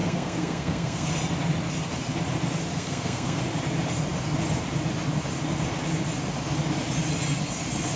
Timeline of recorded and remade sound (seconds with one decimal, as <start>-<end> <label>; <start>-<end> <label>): 0.0-1.1 remade; 1.1-2.7 recorded; 2.7-3.4 remade; 3.4-8.0 recorded